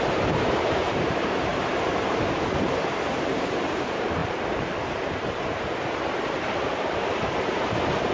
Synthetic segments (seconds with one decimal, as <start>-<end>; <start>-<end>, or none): 0.0-1.5; 3.1-4.2; 6.0-8.1